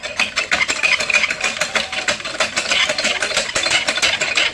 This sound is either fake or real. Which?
real